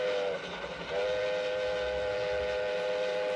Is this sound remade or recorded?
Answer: recorded